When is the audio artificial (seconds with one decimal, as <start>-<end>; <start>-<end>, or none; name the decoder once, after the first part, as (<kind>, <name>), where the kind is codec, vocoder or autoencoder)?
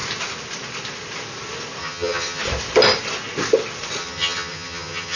1.8-2.4 (vocoder, HiFi-GAN); 4.0-5.2